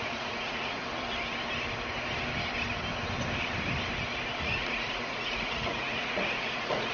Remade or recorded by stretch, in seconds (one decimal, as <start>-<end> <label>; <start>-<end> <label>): 0.0-0.8 remade; 0.8-4.4 recorded; 4.4-6.9 remade

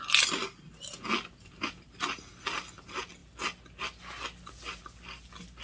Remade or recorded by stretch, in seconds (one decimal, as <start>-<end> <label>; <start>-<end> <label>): 0.0-5.6 recorded

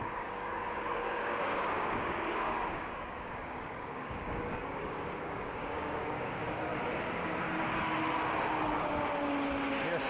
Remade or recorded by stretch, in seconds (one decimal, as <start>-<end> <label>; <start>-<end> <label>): 0.0-6.7 remade; 6.7-10.1 recorded

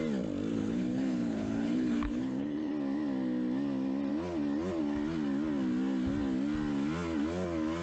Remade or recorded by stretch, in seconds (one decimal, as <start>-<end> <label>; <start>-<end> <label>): 0.0-0.5 recorded; 0.5-2.7 remade; 2.7-7.8 recorded

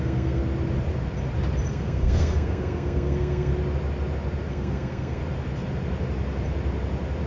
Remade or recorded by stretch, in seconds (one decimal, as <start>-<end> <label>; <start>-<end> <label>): 0.0-0.4 remade; 0.4-1.7 recorded; 1.7-3.5 remade; 3.5-4.5 recorded; 4.5-5.2 remade; 5.2-7.3 recorded

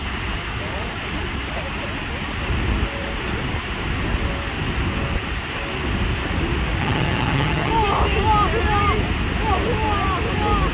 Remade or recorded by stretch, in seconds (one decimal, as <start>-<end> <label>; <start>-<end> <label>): 0.0-6.8 recorded; 6.8-7.7 remade; 7.7-10.7 recorded

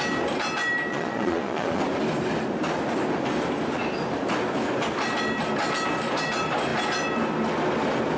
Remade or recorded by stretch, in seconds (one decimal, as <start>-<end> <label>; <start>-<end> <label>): 0.0-0.9 recorded; 0.9-1.8 remade; 1.8-8.2 recorded

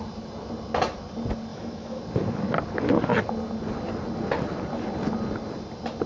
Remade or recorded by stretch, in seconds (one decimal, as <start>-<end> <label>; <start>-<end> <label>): 0.0-1.5 recorded; 1.5-2.0 remade; 2.0-6.1 recorded